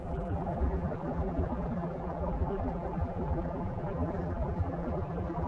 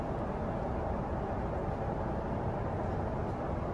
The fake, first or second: first